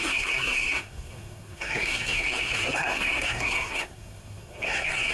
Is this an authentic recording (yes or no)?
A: no